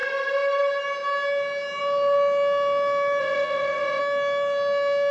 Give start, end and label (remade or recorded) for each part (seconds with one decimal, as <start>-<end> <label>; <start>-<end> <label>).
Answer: 0.0-3.2 recorded; 3.2-4.0 remade; 4.0-5.1 recorded